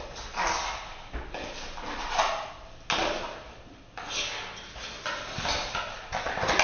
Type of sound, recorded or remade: recorded